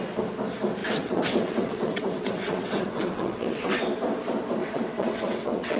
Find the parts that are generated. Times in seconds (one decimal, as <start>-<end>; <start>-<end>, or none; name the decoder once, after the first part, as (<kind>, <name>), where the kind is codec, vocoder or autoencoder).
0.8-3.8 (vocoder, WaveNeXt); 4.6-5.8